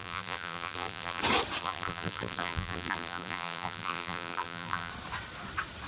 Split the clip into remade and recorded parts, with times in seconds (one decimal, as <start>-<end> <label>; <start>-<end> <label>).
0.0-1.2 remade; 1.2-1.6 recorded; 1.6-4.9 remade; 4.9-5.9 recorded